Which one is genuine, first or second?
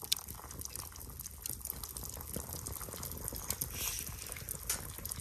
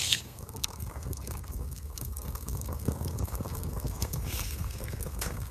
first